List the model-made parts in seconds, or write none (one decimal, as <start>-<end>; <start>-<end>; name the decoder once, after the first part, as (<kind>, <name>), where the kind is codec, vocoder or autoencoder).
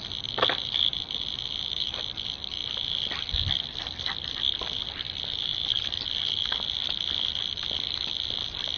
none